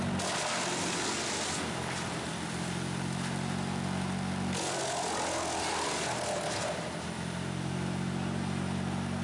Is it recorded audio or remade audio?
recorded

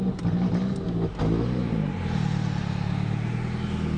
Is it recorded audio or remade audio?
recorded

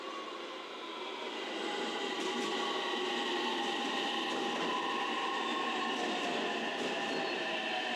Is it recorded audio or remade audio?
recorded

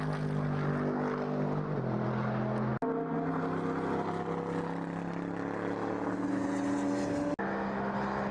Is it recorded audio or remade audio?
recorded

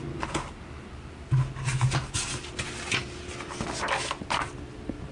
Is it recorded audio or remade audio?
recorded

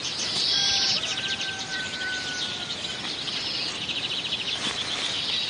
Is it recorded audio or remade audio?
recorded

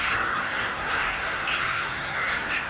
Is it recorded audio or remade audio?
remade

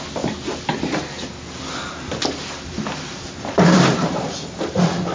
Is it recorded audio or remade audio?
remade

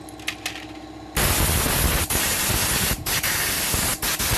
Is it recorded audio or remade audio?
recorded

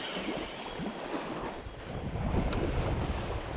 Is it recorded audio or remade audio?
recorded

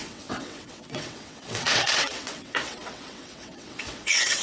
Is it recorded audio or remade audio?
remade